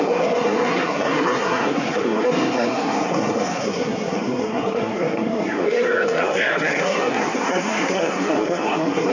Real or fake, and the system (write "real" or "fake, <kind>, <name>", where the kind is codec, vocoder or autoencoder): fake, codec, SNAC